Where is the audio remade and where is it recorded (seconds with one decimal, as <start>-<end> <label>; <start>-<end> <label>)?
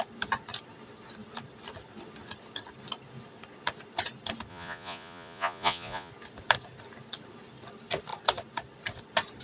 0.0-4.5 recorded; 4.5-6.1 remade; 6.1-9.4 recorded